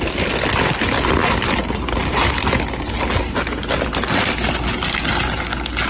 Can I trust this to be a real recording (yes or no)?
yes